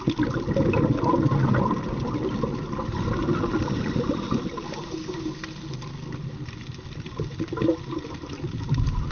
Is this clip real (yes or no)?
yes